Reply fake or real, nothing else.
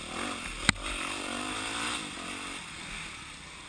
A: real